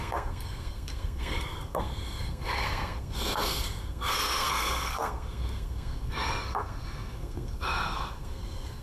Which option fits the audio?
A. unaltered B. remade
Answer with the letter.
B